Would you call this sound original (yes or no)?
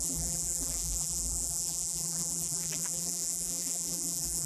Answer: no